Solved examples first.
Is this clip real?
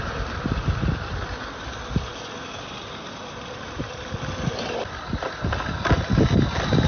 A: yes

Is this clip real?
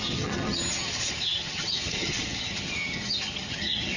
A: no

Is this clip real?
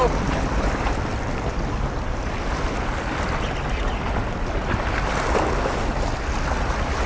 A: yes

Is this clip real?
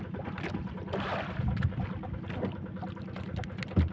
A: yes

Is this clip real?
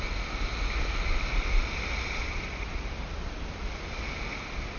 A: yes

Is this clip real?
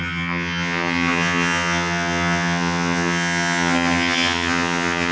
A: no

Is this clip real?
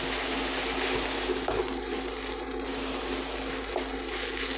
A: yes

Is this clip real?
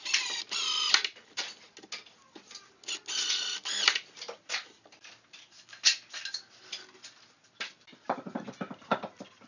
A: yes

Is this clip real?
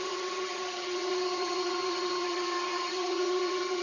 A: no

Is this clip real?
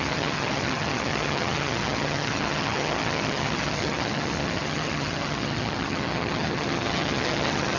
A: no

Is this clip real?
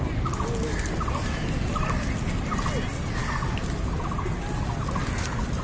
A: yes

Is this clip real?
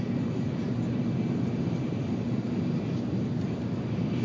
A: yes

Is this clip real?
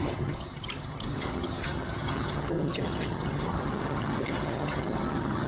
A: no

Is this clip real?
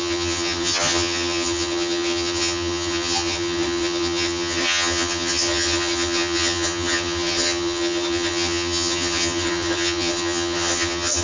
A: no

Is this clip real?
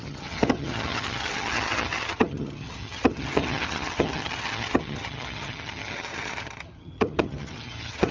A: no